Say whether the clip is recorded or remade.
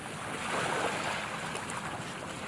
recorded